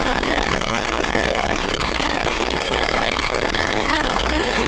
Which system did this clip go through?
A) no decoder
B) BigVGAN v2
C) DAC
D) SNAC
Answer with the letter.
D